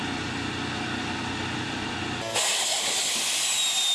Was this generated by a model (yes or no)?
no